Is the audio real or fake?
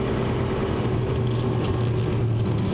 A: real